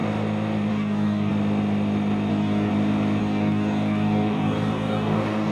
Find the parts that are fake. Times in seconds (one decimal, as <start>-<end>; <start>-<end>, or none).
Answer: 0.7-1.3; 2.3-2.7; 3.2-5.5